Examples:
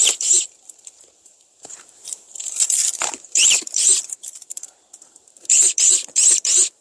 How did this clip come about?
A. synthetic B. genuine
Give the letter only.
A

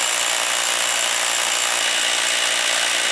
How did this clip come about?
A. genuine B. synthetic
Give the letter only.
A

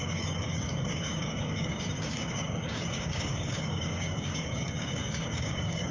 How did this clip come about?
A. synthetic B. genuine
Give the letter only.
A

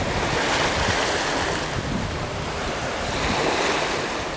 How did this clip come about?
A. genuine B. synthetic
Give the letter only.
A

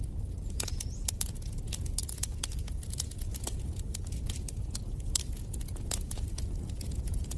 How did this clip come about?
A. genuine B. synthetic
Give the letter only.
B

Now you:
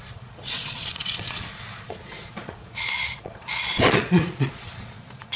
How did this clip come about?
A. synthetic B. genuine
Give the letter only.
A